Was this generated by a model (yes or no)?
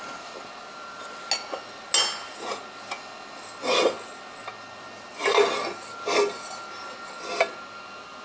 no